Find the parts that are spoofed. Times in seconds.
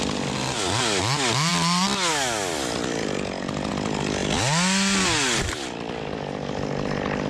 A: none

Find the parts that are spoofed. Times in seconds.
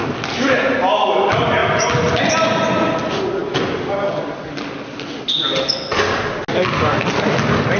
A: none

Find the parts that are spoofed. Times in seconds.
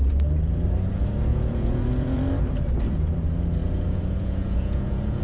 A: 1.3-2.2; 3.6-5.2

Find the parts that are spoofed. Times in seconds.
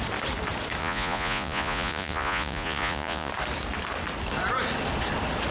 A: 0.8-3.3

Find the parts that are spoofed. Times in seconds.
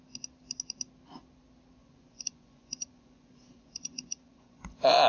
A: 1.8-5.1